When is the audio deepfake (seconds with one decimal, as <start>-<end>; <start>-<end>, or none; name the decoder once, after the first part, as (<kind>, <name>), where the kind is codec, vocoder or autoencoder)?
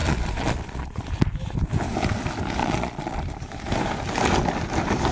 0.0-1.0 (vocoder, Vocos); 2.6-3.2